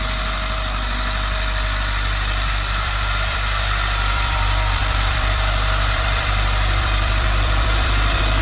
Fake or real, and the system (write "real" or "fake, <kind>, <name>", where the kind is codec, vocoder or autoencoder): fake, vocoder, BigVGAN v2